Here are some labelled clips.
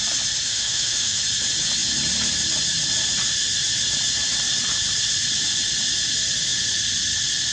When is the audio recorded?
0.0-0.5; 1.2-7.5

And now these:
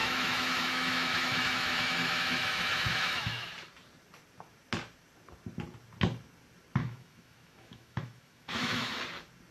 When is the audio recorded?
3.5-6.8; 9.0-9.5

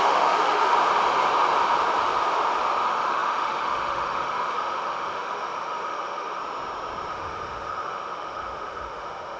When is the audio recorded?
0.7-2.8; 6.4-7.1

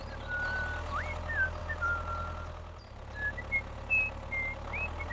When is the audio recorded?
0.0-5.1

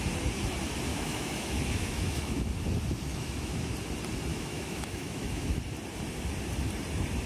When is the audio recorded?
0.0-0.9; 2.5-3.1; 3.7-4.3; 5.6-7.3

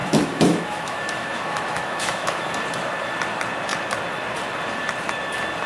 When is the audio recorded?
2.5-5.7

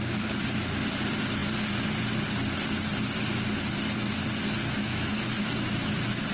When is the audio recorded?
0.0-4.6